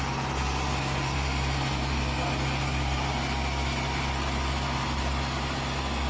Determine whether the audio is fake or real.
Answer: real